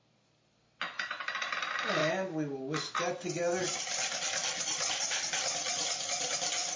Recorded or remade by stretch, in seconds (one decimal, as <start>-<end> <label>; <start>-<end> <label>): 0.0-6.8 recorded